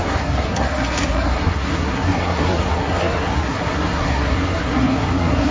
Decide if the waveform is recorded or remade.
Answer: remade